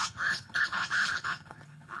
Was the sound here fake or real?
fake